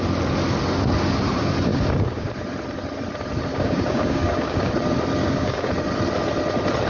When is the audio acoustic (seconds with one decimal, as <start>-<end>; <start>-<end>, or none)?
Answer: 0.0-1.7; 2.3-3.5; 4.7-5.2; 5.7-6.9